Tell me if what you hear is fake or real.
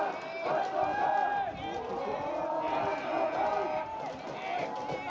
real